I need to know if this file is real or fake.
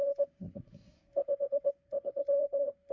fake